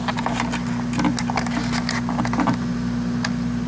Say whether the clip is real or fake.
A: real